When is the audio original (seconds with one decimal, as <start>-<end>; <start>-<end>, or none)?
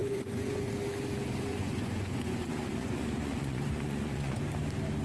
0.7-1.5; 4.4-5.0